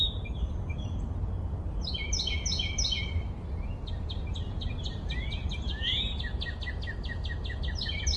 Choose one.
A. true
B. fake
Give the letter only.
A